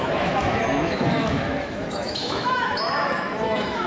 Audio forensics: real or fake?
fake